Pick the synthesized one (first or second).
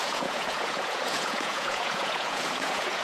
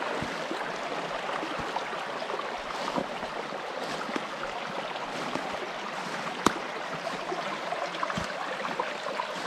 first